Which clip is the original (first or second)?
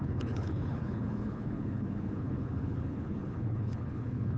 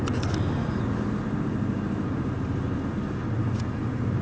second